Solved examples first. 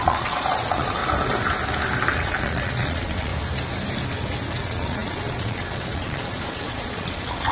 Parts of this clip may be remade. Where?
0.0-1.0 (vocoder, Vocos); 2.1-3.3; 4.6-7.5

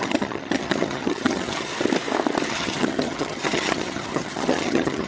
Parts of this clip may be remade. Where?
0.0-1.7 (vocoder, HiFi-GAN); 2.5-5.1

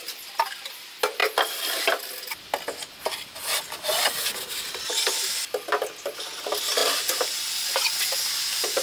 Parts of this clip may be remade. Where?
none

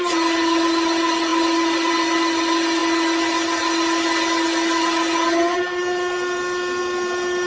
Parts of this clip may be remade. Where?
none

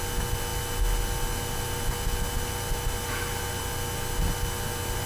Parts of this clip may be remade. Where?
none

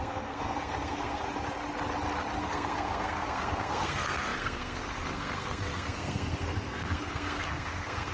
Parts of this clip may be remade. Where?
0.0-1.2 (codec, SNAC); 2.4-8.1

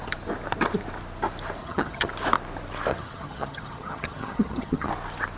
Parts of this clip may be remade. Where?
1.6-2.1 (vocoder, HiFi-GAN); 2.9-4.9